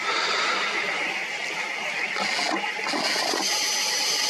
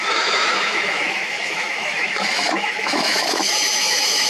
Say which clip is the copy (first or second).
second